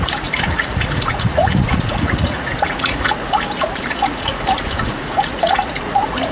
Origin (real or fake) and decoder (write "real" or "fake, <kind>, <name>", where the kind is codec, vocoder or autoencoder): fake, vocoder, Vocos